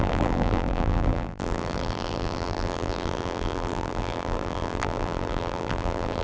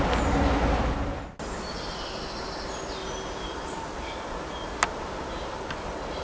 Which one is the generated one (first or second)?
first